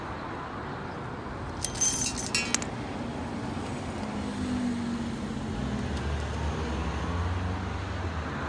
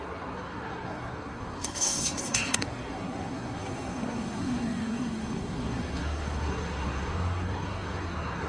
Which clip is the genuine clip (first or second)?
first